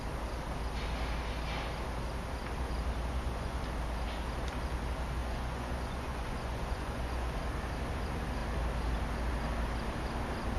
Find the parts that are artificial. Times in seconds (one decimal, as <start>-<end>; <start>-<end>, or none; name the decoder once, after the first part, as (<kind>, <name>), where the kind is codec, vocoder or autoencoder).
3.1-3.6 (vocoder, Vocos); 5.2-7.4